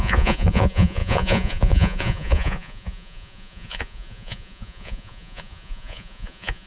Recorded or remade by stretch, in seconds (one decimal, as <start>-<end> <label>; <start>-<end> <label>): 0.0-6.7 remade